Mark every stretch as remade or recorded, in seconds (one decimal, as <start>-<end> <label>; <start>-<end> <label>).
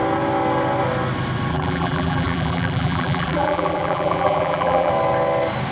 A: 0.0-1.5 recorded; 1.5-4.9 remade; 4.9-5.7 recorded